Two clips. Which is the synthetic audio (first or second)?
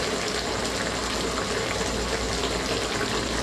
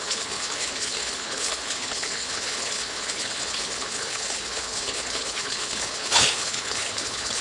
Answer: second